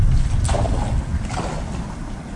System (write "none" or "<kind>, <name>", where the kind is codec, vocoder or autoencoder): none